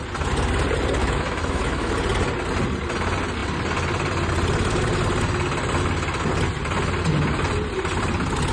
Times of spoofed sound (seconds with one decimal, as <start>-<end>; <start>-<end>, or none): 1.0-1.9